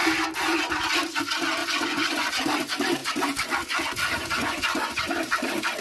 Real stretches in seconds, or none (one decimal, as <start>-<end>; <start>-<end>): 0.0-1.6; 2.3-4.2; 5.0-5.8